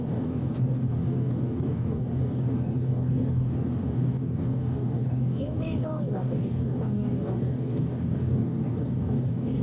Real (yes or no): no